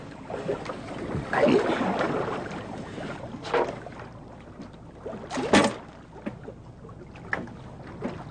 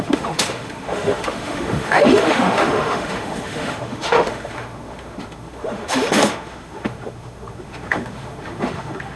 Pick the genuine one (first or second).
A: first